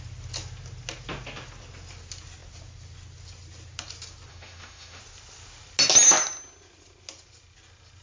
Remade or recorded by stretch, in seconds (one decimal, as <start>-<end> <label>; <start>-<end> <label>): 0.0-4.3 recorded; 4.3-5.0 remade; 5.0-8.0 recorded